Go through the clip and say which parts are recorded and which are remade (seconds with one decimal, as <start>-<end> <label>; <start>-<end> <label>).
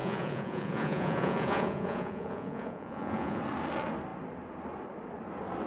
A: 0.0-3.4 remade; 3.4-5.7 recorded